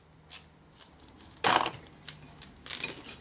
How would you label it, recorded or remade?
recorded